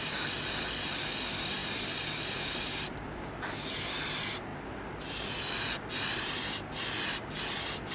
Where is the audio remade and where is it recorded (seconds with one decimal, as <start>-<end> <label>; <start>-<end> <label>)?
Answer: 0.0-7.9 recorded